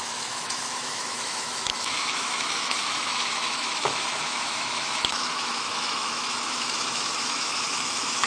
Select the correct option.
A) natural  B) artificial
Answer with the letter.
B